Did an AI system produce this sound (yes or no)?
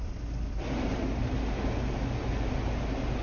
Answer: no